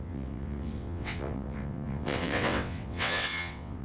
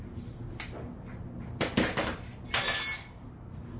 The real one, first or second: second